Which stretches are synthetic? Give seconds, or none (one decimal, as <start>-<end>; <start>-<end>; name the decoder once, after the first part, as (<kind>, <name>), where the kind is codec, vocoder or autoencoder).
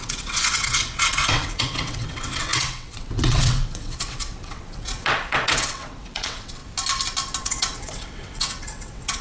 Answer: 0.0-6.6 (vocoder, WaveNeXt); 7.4-9.2